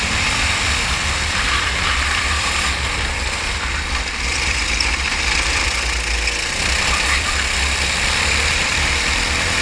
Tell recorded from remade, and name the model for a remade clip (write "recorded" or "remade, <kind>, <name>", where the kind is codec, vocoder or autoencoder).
remade, vocoder, BigVGAN v2